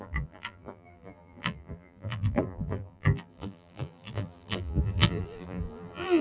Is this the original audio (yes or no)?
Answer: no